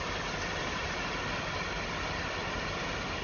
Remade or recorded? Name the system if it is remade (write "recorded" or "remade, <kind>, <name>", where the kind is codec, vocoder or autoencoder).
recorded